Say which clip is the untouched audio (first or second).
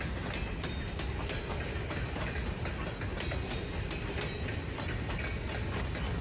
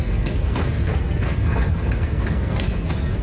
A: first